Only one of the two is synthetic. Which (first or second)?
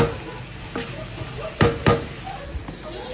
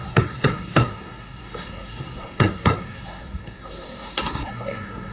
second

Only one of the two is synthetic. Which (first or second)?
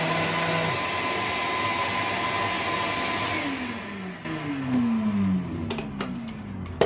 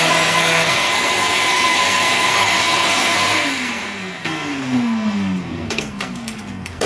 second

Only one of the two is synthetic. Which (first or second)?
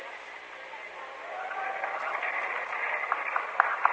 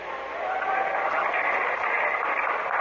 first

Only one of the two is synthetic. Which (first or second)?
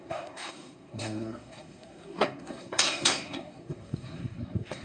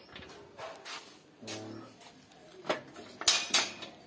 first